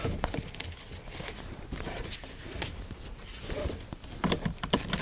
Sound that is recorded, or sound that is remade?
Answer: recorded